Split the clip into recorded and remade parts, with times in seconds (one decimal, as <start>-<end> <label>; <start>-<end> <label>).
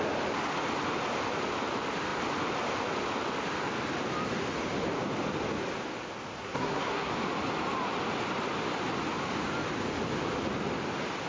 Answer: 0.0-6.4 recorded; 6.4-7.1 remade; 7.1-11.3 recorded